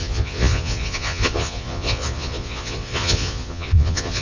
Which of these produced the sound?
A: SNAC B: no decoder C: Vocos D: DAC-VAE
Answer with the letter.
C